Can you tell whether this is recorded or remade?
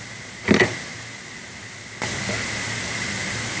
recorded